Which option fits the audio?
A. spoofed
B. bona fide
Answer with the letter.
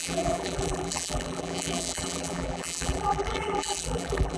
A